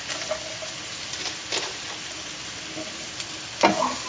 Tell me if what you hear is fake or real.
real